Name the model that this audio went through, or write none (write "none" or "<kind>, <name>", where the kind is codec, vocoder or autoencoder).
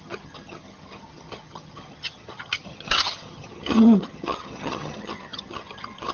vocoder, HiFi-GAN